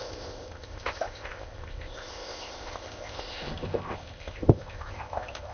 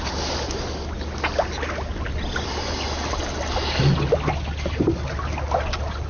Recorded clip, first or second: second